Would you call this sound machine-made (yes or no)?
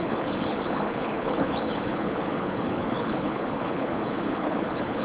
yes